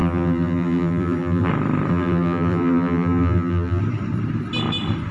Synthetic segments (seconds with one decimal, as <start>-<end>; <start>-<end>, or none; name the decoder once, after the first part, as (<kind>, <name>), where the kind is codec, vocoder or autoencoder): 0.0-1.5 (vocoder, BigVGAN v2); 1.9-3.8